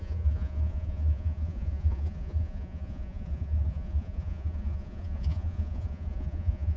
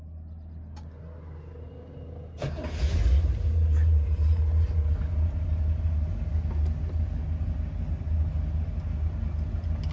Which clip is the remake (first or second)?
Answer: first